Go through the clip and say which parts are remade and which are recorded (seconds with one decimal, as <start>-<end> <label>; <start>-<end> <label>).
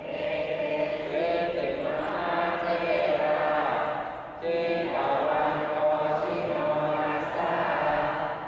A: 0.0-1.1 remade; 1.1-5.5 recorded; 5.5-7.2 remade; 7.2-8.5 recorded